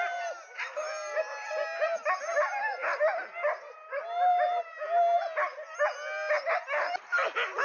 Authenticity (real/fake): real